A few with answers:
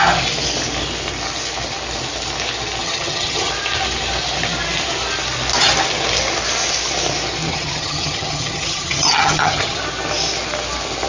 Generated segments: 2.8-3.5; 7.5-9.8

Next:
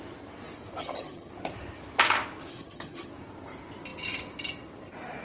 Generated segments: 0.8-1.3; 2.5-3.1

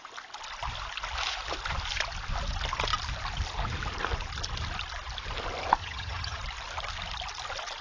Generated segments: 5.8-6.4

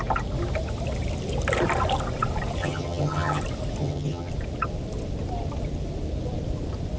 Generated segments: 2.6-3.4; 3.8-4.3